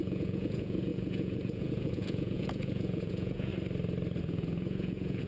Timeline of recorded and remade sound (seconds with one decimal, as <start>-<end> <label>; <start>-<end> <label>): 0.0-3.5 remade; 3.5-4.2 recorded; 4.2-5.3 remade